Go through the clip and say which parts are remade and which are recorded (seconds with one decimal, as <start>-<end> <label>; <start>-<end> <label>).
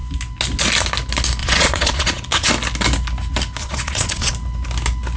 0.0-1.4 recorded; 1.4-2.5 remade; 2.5-3.6 recorded; 3.6-4.3 remade; 4.3-5.2 recorded